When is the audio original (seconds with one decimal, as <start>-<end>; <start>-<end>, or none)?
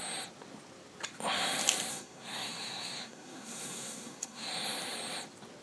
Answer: 0.0-1.9; 4.5-5.6